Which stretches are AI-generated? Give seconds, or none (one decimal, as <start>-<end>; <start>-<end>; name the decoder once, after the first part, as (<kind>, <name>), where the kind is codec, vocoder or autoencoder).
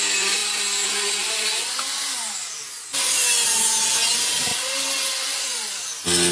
none